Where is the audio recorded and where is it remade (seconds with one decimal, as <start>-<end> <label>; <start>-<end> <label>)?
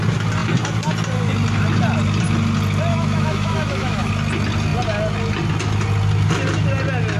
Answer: 0.0-2.9 recorded; 2.9-4.1 remade; 4.1-7.2 recorded